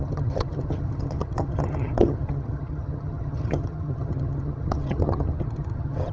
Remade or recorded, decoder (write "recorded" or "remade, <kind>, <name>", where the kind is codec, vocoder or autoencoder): remade, vocoder, HiFi-GAN